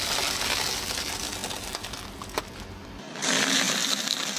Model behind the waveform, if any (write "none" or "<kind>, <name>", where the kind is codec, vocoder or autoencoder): none